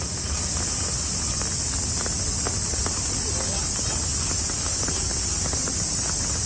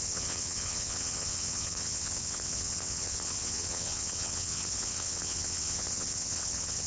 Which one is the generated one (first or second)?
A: second